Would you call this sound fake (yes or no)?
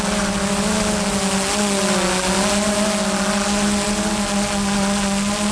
no